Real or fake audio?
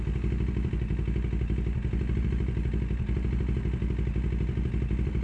real